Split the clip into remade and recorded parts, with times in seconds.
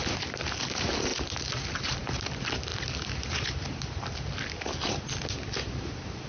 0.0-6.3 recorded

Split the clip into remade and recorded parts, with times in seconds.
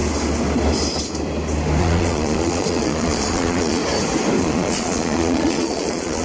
0.0-1.8 recorded; 1.8-3.8 remade; 3.8-4.4 recorded; 4.4-6.2 remade